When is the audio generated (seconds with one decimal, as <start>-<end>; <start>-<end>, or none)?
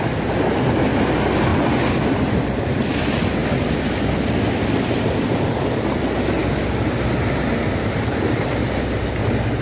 1.5-6.0